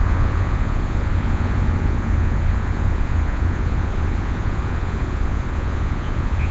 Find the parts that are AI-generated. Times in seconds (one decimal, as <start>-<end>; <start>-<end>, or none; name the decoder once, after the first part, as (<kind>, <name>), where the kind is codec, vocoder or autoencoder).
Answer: 0.0-6.5 (vocoder, Vocos)